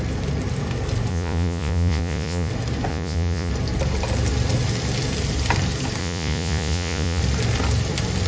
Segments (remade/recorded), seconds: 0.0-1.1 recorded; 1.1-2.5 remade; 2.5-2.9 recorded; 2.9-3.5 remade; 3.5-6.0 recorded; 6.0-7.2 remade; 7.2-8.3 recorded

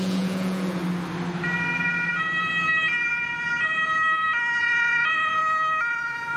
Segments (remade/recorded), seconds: 0.0-0.8 remade; 0.8-4.6 recorded; 4.6-5.4 remade; 5.4-5.9 recorded; 5.9-6.4 remade

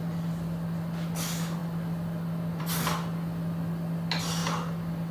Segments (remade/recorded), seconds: 0.0-5.1 recorded